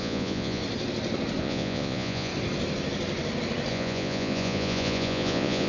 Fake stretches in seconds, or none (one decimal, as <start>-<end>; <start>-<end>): 0.0-0.6; 1.4-2.3; 3.7-5.7